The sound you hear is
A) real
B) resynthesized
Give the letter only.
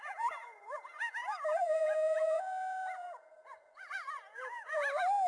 B